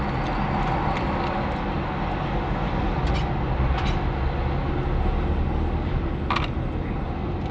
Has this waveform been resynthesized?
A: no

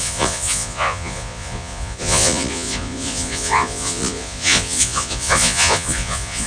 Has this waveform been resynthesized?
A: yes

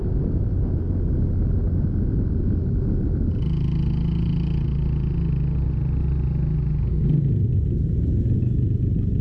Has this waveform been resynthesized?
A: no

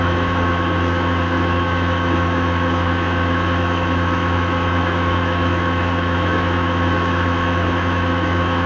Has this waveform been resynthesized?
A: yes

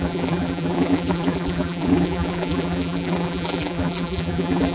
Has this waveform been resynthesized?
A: yes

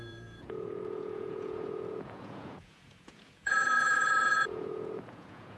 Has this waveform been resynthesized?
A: yes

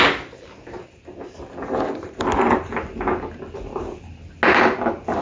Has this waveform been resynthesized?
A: no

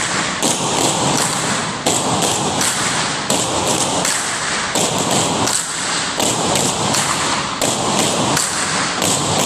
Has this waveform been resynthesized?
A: no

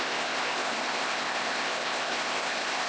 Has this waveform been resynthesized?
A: yes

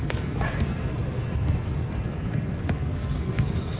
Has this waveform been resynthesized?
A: yes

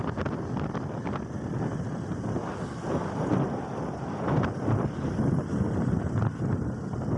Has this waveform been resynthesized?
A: no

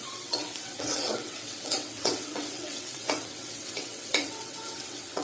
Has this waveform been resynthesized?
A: yes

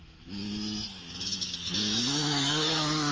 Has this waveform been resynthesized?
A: yes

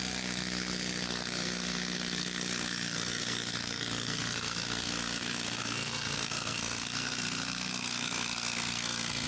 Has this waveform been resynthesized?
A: yes